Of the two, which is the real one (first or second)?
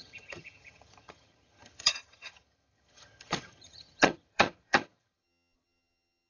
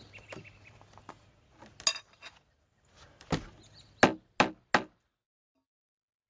second